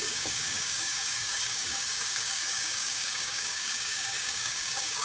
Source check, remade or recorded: remade